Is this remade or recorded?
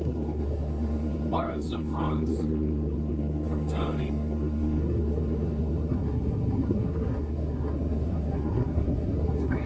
remade